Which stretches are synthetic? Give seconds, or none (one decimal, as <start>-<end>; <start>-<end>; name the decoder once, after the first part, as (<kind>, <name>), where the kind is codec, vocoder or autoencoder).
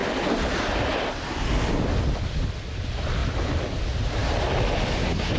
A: none